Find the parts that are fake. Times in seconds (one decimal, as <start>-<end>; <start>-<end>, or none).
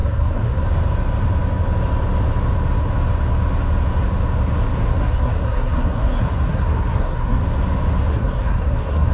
0.0-0.6; 4.9-7.4; 8.1-9.1